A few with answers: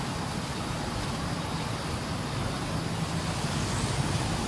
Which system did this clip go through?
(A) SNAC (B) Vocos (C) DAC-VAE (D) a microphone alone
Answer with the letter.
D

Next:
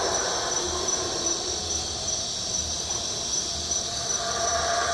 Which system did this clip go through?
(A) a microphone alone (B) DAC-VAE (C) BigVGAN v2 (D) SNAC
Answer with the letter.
A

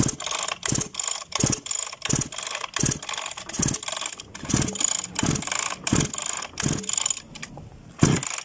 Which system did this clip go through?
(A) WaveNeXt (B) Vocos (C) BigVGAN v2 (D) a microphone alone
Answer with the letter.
D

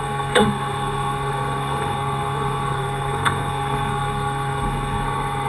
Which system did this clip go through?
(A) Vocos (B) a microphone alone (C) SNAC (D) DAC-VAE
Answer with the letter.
C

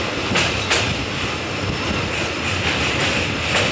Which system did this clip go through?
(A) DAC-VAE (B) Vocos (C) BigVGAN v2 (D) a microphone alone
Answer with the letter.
D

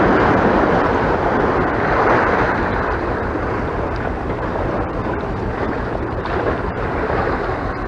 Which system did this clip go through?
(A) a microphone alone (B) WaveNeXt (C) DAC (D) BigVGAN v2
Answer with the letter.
A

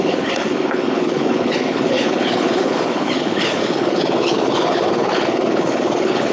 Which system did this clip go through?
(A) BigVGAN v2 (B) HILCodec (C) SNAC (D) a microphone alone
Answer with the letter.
B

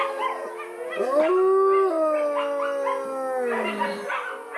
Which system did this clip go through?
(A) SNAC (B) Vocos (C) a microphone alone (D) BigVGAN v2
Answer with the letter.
C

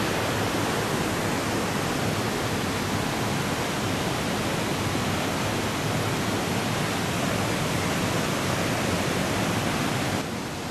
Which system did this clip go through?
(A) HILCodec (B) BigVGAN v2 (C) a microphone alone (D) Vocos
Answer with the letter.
C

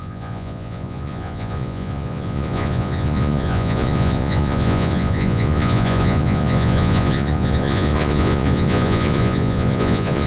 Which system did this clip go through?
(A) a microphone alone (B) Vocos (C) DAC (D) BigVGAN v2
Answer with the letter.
B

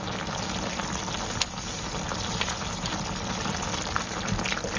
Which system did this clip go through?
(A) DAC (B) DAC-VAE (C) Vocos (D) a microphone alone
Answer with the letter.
D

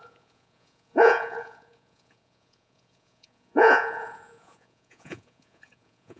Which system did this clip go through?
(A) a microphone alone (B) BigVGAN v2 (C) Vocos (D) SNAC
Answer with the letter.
C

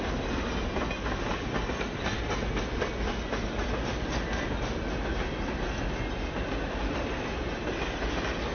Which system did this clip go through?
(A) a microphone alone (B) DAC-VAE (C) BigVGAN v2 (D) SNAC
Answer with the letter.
A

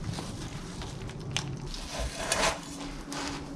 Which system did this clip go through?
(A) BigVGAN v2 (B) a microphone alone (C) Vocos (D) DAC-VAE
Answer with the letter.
B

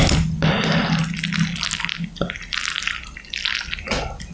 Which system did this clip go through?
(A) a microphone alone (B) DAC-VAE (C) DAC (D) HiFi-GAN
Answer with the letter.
A